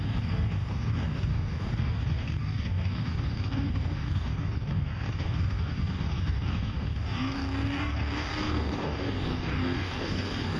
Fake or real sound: fake